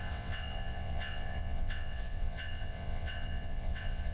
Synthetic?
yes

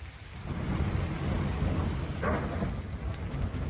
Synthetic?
no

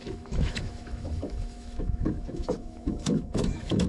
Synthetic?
yes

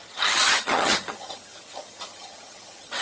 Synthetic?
yes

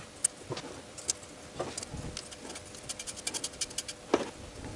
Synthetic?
no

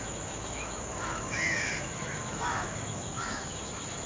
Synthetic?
yes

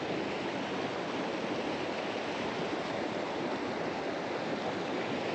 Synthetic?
no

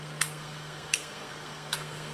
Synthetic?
yes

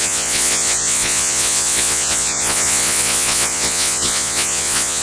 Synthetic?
yes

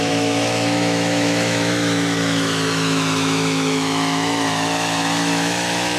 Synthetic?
yes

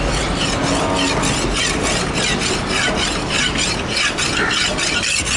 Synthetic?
no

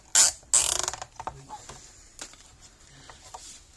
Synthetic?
no